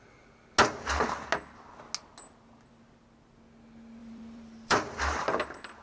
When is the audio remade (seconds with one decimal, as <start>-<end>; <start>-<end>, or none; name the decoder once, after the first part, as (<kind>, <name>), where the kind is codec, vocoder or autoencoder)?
4.0-5.2 (vocoder, BigVGAN v2)